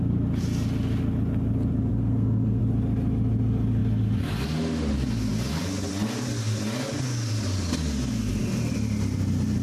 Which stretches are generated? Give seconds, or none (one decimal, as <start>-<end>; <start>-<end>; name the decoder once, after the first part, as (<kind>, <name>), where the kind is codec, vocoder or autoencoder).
1.9-2.6 (codec, SNAC)

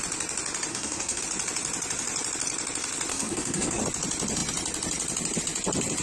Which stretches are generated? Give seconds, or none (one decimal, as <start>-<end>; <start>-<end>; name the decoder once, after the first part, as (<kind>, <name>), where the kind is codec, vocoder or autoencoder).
0.7-1.2 (codec, SNAC); 3.1-3.8

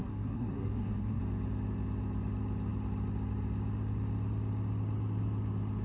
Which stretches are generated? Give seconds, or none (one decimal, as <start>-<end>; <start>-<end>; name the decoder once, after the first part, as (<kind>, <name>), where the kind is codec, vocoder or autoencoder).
0.0-1.2 (codec, SNAC)

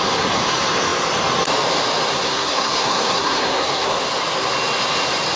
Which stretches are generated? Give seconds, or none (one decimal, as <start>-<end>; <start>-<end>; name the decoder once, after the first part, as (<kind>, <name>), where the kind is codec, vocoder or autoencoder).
2.1-4.0 (codec, SNAC)